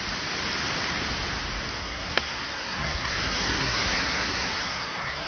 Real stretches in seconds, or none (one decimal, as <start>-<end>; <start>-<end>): 0.0-1.8